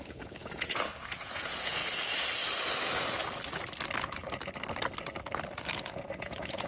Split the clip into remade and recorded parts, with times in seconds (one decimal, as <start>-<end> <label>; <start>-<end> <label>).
0.0-1.8 remade; 1.8-5.8 recorded; 5.8-6.7 remade